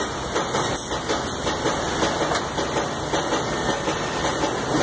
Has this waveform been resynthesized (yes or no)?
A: no